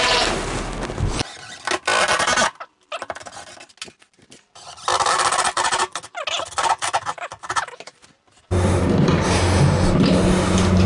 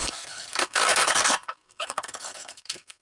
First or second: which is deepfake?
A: second